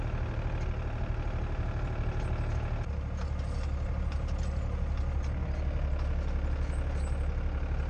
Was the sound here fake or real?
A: real